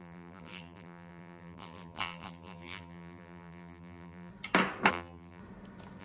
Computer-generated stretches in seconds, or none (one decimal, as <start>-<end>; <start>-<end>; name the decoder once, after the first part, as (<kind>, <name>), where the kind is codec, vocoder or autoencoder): 0.0-4.3 (vocoder, BigVGAN v2); 4.9-5.4

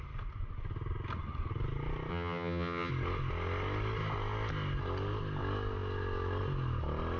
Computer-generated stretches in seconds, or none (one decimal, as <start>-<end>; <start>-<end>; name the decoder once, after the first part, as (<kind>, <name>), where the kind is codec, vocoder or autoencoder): 2.1-2.9 (vocoder, HiFi-GAN)

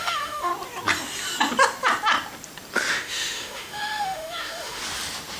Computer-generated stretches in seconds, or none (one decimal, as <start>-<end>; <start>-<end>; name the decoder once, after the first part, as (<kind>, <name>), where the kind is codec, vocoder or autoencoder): 0.0-0.5 (autoencoder, DAC-VAE); 2.9-4.8

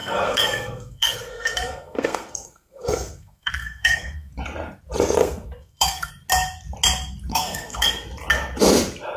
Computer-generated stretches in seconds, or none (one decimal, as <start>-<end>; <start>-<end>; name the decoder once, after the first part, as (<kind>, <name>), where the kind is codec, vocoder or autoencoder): 0.0-4.3 (codec, SNAC); 5.2-6.1; 7.3-7.9